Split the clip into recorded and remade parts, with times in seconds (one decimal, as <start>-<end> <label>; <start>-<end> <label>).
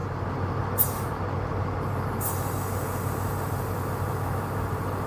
0.0-5.1 recorded